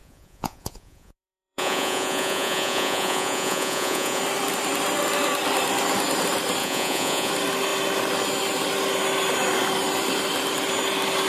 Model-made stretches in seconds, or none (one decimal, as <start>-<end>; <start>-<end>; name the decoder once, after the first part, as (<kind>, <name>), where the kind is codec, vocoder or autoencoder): 0.0-4.2 (vocoder, Vocos); 6.6-7.3